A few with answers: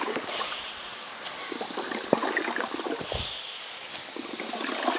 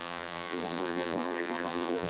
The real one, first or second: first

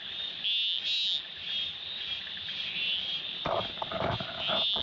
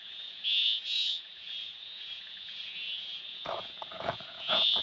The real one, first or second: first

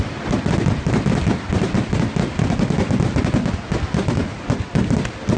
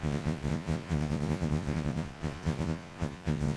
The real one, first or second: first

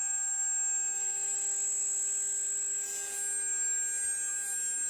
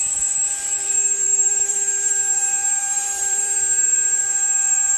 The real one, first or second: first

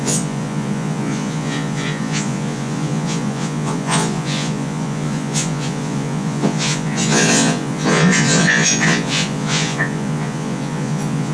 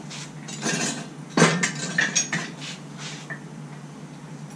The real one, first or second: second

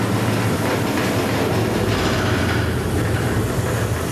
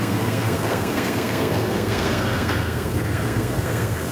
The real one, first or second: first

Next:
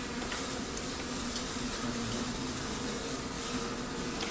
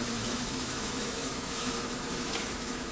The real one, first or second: first